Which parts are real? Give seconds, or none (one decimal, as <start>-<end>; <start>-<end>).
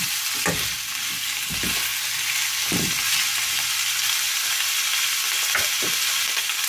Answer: 0.0-6.7